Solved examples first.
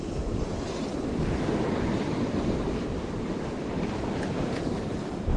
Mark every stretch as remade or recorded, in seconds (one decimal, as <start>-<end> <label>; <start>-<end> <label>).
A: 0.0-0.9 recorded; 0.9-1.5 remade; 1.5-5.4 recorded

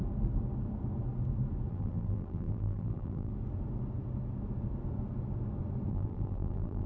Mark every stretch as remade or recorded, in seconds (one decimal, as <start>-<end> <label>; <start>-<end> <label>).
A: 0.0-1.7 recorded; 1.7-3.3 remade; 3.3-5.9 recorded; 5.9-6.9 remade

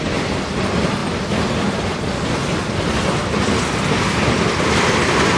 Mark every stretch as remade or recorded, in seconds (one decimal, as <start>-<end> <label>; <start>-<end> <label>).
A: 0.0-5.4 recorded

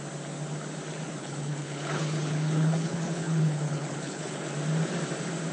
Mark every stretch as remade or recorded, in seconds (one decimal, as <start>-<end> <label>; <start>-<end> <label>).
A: 0.0-1.2 recorded; 1.2-4.5 remade; 4.5-5.5 recorded

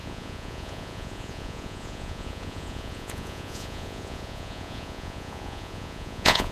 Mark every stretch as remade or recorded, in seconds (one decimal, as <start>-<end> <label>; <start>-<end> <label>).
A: 0.0-6.5 remade

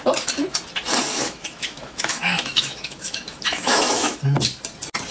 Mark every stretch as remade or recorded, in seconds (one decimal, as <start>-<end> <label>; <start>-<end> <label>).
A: 0.0-1.1 recorded; 1.1-4.2 remade; 4.2-5.1 recorded